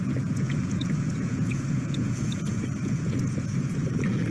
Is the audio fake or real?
fake